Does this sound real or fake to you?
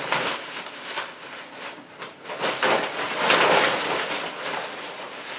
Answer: real